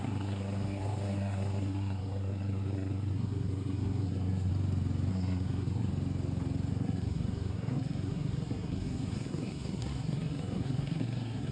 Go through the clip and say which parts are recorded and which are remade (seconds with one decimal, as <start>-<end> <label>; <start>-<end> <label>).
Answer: 0.0-4.5 remade; 4.5-5.1 recorded; 5.1-5.9 remade; 5.9-6.7 recorded; 6.7-11.5 remade